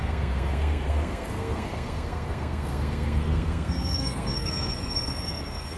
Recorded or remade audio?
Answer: remade